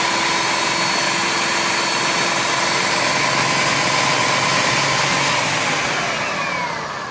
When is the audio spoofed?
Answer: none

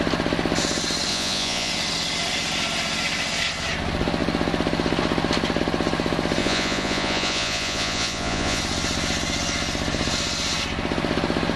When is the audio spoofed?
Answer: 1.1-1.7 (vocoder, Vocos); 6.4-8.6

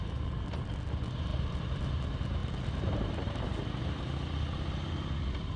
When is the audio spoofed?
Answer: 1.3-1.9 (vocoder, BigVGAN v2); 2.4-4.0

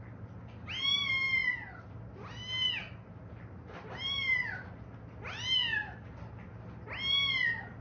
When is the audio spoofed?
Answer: none